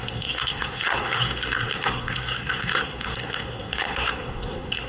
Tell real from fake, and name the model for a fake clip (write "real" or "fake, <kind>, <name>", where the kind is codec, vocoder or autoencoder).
fake, codec, SNAC